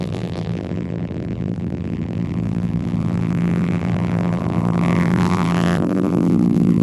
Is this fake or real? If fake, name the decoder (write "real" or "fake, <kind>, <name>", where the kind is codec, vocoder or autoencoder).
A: fake, vocoder, BigVGAN v2